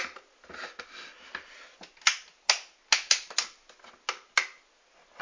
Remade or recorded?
recorded